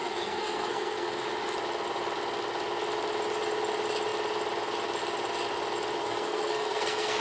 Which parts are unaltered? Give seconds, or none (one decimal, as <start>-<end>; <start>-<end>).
1.3-6.0